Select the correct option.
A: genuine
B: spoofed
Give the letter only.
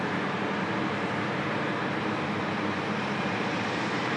B